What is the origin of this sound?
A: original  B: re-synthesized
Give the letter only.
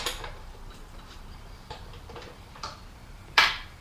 B